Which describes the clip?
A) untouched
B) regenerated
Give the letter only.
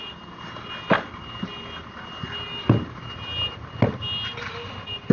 A